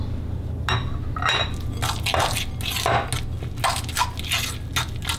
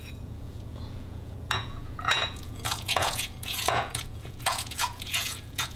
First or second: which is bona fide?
first